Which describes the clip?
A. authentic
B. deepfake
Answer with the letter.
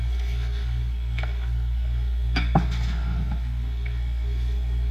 B